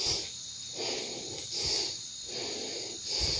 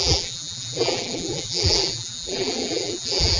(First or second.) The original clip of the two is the first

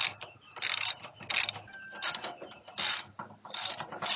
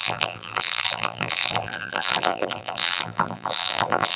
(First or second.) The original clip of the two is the first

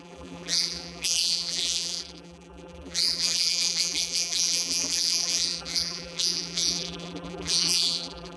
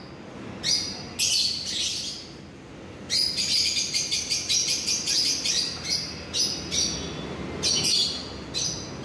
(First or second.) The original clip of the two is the second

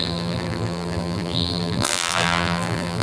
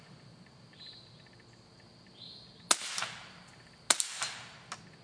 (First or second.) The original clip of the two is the second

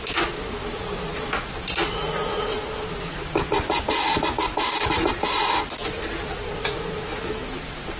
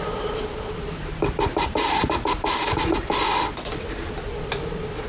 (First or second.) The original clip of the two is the first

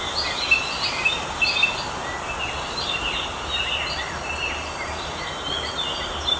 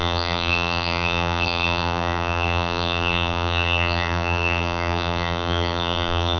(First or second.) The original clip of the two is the first